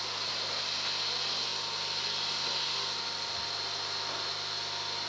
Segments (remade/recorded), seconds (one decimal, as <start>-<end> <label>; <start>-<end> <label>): 0.0-5.1 remade